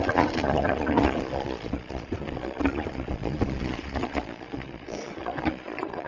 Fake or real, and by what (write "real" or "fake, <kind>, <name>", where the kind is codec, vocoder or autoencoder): fake, vocoder, Vocos